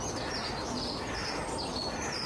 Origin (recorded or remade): recorded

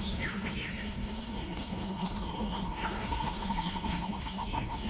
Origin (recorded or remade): remade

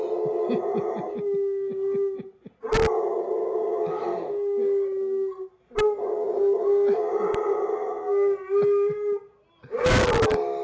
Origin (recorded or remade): recorded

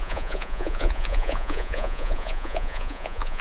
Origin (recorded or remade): remade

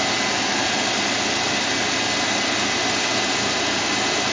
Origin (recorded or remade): recorded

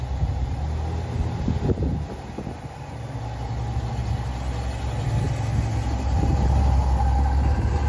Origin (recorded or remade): recorded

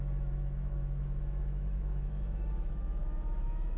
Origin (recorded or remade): remade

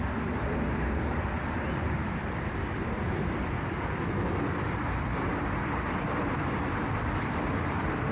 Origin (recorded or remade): remade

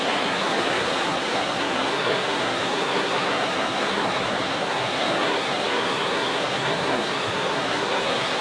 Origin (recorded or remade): remade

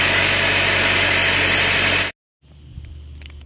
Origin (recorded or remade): recorded